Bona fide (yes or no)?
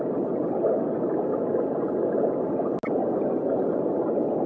yes